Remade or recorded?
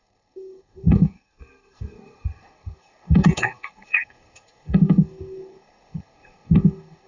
remade